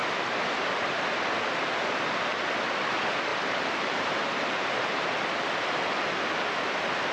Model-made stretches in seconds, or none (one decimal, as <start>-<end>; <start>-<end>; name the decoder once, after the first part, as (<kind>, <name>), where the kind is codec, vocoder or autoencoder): 0.0-1.0 (vocoder, BigVGAN v2); 3.3-5.0